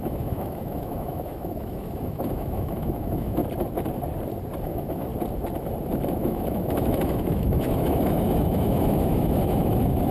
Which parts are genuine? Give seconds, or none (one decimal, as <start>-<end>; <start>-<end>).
3.4-4.6; 5.1-6.2

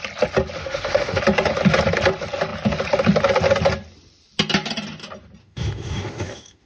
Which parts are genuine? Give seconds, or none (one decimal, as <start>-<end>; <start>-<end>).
0.0-0.6; 1.2-5.4

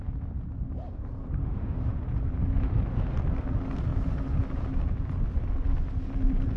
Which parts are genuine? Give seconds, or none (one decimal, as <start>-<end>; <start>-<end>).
0.0-1.4; 2.0-6.6

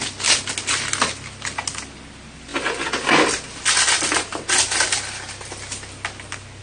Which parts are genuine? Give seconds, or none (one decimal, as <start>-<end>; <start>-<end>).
0.0-6.6

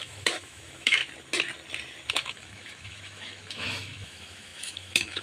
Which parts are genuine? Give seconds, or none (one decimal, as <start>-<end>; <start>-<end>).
1.0-2.1

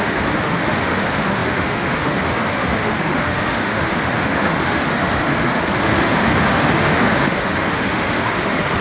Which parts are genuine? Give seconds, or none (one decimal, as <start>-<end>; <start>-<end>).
none

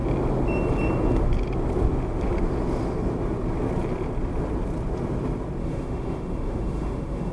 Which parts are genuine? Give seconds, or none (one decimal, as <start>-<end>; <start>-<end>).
0.0-5.6